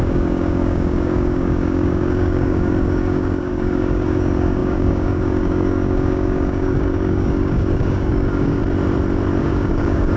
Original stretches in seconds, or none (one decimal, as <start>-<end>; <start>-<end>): 8.6-9.4